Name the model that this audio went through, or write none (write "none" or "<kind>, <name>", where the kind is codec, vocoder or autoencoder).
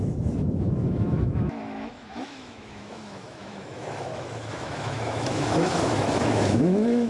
autoencoder, DAC-VAE